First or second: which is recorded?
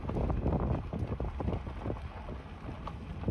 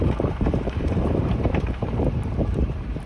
first